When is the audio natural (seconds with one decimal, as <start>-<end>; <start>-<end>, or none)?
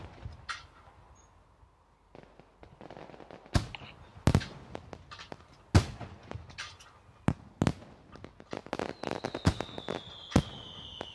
0.0-11.1